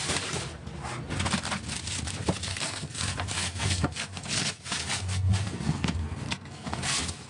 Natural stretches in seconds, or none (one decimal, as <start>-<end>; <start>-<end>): 0.0-2.5